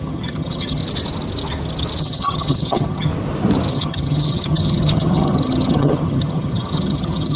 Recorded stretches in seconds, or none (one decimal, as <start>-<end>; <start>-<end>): 0.8-2.0; 3.1-3.7